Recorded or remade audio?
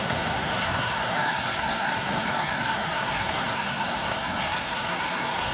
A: remade